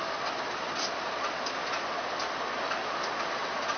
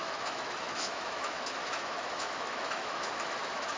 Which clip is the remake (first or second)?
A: second